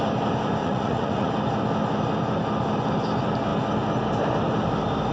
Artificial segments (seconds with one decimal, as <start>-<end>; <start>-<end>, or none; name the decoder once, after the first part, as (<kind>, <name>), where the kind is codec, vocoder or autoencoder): 0.6-1.3 (vocoder, Vocos)